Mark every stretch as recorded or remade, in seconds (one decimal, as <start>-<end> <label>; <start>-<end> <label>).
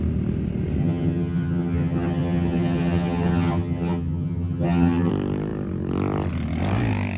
0.0-0.8 recorded; 0.8-5.1 remade; 5.1-7.2 recorded